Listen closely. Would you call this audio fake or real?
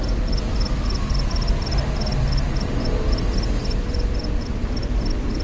real